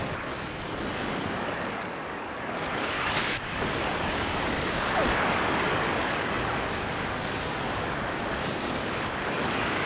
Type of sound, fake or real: fake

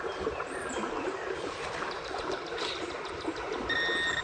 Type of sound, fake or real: real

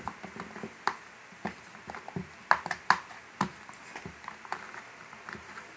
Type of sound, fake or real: real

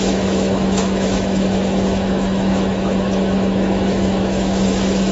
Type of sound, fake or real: fake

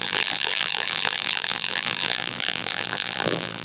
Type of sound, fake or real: fake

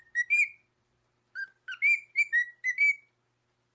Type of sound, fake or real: real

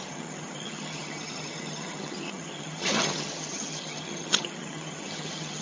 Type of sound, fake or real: fake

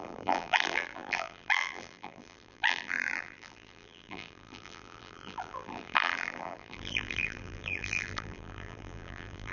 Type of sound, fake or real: fake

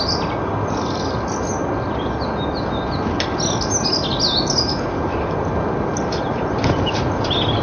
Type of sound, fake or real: real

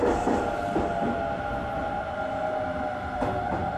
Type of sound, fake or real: real